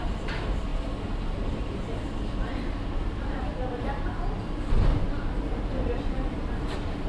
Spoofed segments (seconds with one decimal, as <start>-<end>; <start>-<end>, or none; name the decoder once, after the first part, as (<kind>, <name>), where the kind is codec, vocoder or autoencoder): 4.9-7.1 (vocoder, BigVGAN v2)